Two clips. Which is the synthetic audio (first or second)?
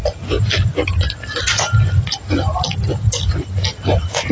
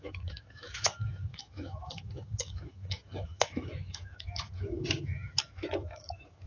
second